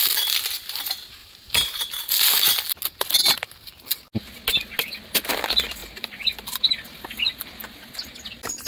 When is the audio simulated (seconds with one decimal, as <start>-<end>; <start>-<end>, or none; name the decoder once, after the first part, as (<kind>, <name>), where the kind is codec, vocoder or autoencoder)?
1.2-1.9 (vocoder, BigVGAN v2); 5.8-6.6